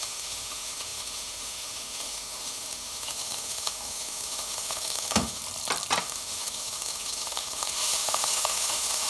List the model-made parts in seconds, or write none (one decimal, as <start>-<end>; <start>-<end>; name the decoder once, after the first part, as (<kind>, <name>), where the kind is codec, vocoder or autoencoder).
0.0-5.4 (autoencoder, DAC-VAE); 6.0-9.1